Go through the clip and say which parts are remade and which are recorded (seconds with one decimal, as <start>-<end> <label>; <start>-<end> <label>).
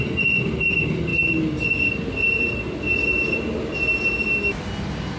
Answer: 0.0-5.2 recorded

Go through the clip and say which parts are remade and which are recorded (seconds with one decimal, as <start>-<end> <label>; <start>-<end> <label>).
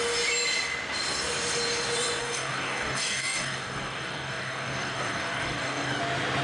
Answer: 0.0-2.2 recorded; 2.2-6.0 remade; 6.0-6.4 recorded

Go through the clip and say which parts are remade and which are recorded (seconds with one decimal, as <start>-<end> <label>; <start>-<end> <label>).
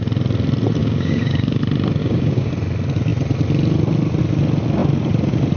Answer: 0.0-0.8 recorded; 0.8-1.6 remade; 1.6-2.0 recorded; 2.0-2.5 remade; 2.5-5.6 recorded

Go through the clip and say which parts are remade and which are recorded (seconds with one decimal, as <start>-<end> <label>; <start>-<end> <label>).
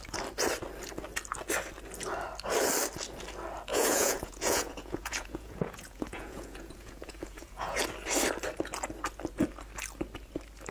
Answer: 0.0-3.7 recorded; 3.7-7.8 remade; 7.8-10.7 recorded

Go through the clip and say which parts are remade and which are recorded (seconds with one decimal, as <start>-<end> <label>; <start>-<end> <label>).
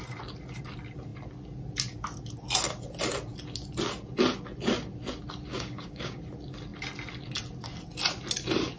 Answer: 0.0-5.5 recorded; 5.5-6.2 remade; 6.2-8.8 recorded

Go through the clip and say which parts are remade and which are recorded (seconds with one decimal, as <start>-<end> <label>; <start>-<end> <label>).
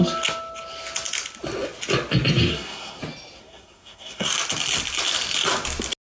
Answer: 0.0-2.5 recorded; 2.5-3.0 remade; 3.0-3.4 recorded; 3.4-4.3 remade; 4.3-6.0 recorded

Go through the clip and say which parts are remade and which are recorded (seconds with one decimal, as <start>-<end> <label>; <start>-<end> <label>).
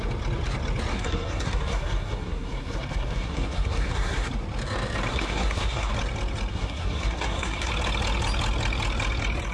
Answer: 0.0-0.9 recorded; 0.9-4.3 remade; 4.3-5.1 recorded; 5.1-5.9 remade; 5.9-6.5 recorded; 6.5-7.7 remade; 7.7-9.5 recorded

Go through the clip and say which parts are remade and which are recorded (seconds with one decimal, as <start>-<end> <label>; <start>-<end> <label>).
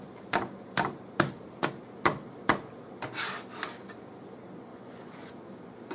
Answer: 0.0-4.7 recorded; 4.7-5.3 remade; 5.3-5.9 recorded